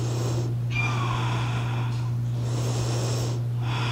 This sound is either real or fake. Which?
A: real